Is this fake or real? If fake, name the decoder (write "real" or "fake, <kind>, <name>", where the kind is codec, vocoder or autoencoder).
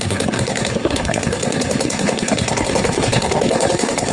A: fake, codec, SNAC